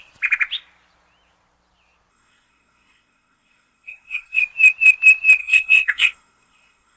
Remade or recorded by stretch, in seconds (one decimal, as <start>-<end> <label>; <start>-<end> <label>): 0.0-2.1 recorded; 2.1-4.4 remade; 4.4-5.4 recorded; 5.4-7.0 remade